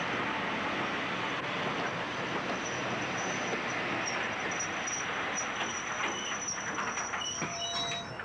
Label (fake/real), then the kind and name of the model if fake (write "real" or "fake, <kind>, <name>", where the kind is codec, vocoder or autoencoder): real